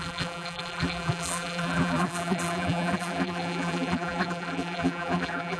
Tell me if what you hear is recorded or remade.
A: remade